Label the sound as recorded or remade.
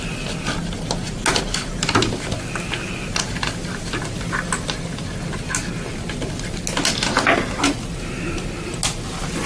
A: recorded